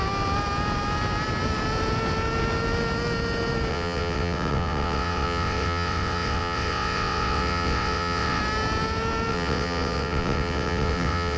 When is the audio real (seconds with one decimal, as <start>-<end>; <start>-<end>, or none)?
0.0-3.7; 8.4-9.3